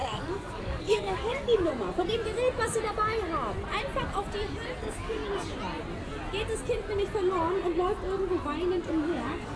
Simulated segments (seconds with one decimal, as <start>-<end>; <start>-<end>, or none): 0.0-1.7; 4.8-5.2; 8.9-9.6